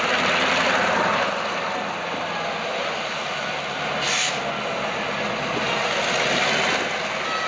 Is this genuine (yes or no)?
yes